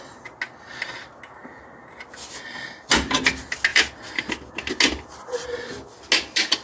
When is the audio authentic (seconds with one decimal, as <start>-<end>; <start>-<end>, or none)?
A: 0.0-6.6